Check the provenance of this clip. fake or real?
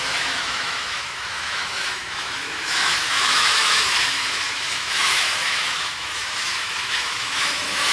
fake